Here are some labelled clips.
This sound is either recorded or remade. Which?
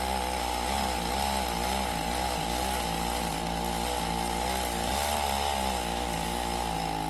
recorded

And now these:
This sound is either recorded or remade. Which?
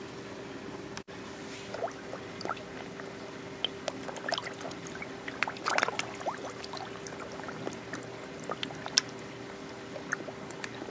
recorded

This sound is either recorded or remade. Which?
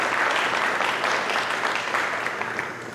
recorded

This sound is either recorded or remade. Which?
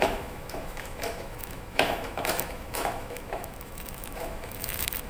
remade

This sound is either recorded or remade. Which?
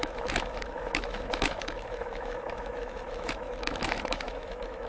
remade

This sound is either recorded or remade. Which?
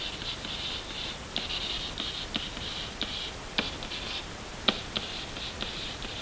recorded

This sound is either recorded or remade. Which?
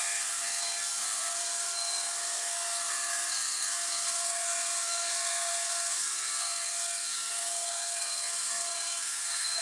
remade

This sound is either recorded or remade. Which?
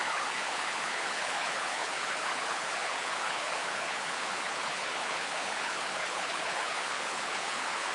remade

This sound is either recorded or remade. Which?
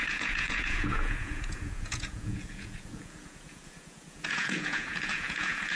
remade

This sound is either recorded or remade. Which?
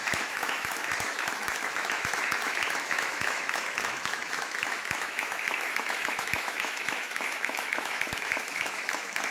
remade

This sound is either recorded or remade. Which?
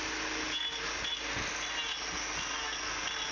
recorded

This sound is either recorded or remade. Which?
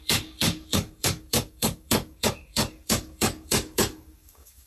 remade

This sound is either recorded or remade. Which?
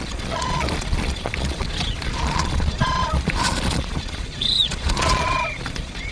remade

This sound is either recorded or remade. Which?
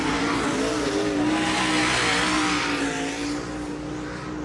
recorded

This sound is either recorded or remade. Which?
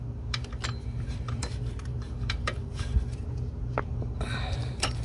remade